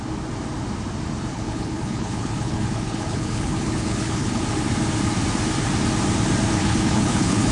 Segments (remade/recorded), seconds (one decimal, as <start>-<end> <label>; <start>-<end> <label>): 0.0-1.3 recorded; 1.3-4.4 remade; 4.4-6.6 recorded; 6.6-7.5 remade